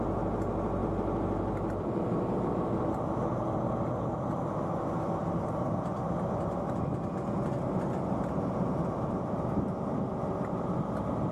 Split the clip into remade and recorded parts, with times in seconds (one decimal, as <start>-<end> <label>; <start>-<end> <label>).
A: 0.0-11.3 recorded